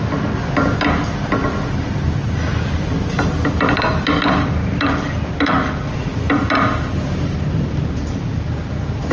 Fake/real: real